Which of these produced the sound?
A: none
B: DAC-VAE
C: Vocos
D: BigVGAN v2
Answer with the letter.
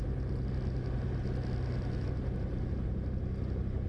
A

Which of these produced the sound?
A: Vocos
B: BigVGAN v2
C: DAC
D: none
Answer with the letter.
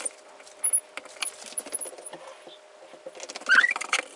D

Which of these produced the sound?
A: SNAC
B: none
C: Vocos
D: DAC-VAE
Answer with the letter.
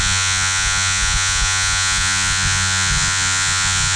C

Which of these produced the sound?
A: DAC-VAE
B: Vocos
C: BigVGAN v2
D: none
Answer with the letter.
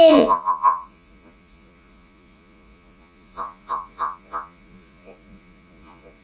B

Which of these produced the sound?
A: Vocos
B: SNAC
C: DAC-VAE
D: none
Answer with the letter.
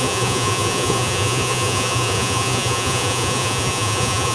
A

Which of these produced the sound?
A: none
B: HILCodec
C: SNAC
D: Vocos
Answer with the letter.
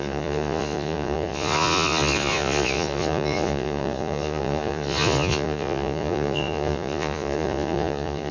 D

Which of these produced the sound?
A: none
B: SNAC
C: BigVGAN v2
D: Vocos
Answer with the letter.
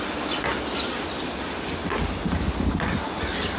A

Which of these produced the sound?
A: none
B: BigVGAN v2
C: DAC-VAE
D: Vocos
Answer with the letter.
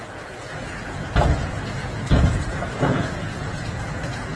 D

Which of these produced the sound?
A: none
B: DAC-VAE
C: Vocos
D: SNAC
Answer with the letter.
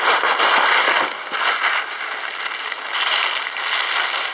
A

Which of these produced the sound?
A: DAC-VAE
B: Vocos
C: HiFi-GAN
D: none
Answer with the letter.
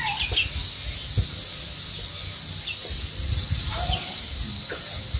D